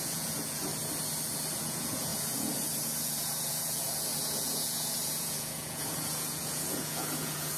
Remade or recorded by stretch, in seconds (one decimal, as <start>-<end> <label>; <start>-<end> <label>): 0.0-0.7 remade; 0.7-1.6 recorded; 1.6-7.6 remade